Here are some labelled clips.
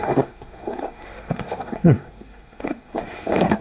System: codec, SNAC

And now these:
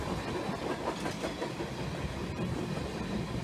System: none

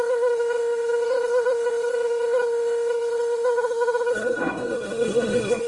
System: codec, SNAC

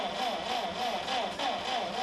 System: none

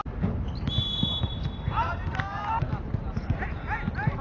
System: none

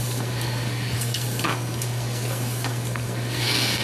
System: codec, SNAC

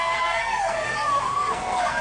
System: codec, SNAC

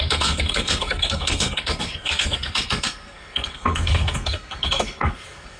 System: codec, SNAC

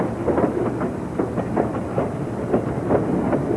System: none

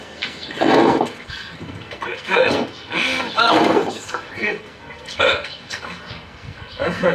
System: codec, SNAC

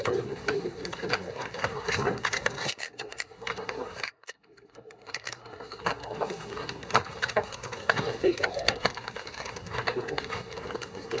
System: codec, SNAC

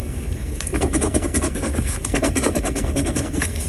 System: codec, SNAC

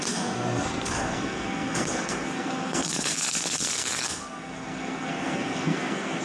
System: codec, SNAC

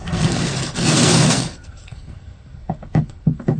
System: codec, SNAC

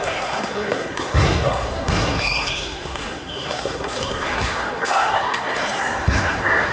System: codec, SNAC